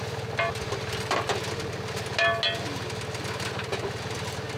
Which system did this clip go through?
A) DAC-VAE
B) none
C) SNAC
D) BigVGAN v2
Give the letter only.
B